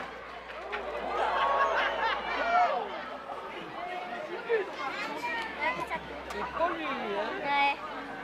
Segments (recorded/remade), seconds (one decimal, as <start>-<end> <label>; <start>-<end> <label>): 0.0-5.3 recorded; 5.3-6.6 remade; 6.6-8.2 recorded